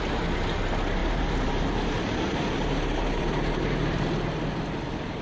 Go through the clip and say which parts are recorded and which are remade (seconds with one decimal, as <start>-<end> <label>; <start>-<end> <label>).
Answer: 0.0-1.0 recorded; 1.0-4.1 remade; 4.1-5.2 recorded